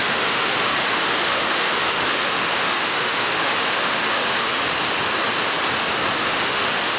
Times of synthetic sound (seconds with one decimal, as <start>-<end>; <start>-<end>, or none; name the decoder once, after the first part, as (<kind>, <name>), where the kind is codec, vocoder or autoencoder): 0.0-4.5 (autoencoder, DAC-VAE); 6.2-7.0